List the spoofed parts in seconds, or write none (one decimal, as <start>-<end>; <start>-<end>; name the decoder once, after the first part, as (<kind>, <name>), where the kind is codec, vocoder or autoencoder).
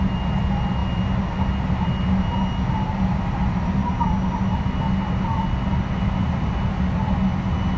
none